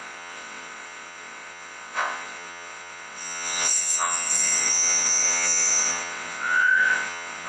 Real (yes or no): no